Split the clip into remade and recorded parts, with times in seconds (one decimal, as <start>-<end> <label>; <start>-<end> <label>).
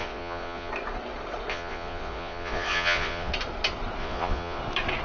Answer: 0.0-0.7 remade; 0.7-1.5 recorded; 1.5-3.3 remade; 3.3-4.0 recorded; 4.0-4.6 remade; 4.6-5.0 recorded